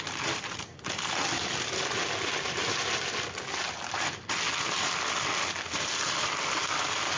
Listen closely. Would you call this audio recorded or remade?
recorded